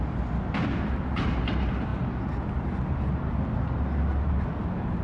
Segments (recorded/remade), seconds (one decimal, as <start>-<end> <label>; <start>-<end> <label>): 0.0-5.0 recorded